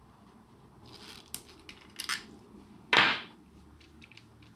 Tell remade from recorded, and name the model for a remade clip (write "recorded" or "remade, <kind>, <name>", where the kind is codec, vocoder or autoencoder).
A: recorded